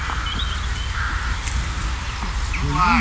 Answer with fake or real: real